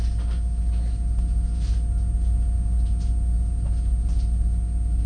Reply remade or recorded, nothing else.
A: recorded